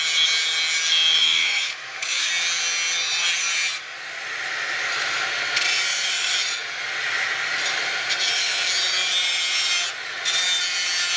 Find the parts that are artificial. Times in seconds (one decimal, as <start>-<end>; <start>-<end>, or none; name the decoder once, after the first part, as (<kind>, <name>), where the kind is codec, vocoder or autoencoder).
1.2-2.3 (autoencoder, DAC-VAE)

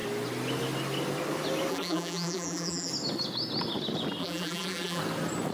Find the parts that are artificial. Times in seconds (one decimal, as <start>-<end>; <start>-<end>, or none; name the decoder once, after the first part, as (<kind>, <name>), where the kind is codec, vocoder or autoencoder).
1.7-2.9 (vocoder, BigVGAN v2); 4.2-5.0

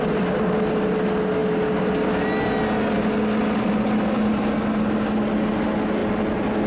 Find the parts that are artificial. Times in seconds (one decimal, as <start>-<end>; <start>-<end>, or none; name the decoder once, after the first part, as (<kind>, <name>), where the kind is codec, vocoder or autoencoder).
none

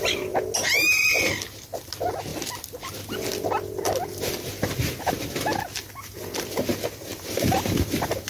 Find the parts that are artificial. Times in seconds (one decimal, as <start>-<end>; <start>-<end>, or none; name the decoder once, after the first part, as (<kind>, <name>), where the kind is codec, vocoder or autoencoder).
7.1-7.9 (vocoder, BigVGAN v2)